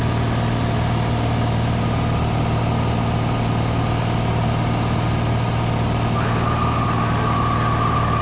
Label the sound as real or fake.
real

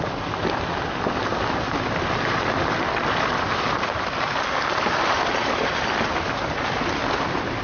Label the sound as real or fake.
real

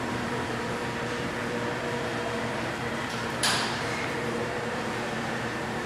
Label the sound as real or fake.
fake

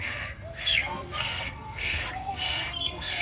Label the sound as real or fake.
fake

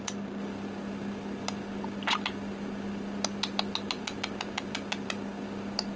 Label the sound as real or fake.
real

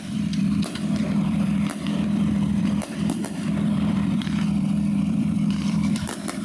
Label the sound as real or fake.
fake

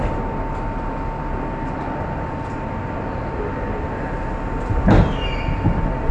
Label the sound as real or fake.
real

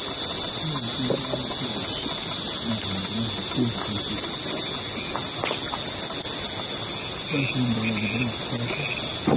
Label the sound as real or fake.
real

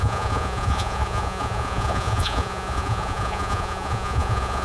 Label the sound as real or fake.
fake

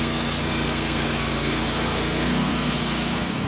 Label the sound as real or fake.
fake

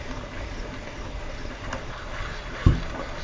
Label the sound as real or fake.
real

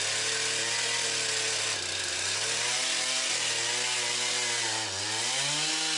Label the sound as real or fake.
real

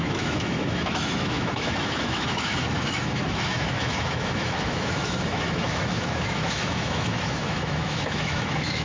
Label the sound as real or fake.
fake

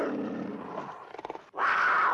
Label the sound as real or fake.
real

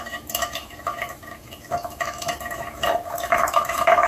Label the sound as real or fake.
fake